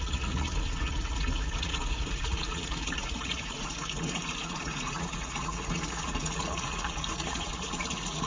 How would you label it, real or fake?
fake